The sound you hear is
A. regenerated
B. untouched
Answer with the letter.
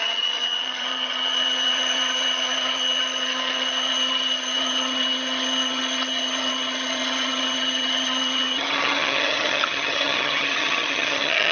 A